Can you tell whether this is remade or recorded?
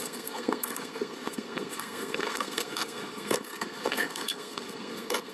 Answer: remade